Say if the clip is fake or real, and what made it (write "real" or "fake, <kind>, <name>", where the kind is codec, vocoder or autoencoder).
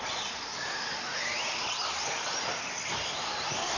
real